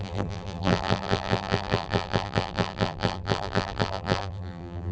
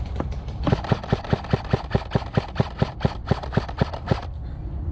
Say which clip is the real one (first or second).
second